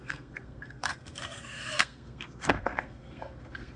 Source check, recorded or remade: remade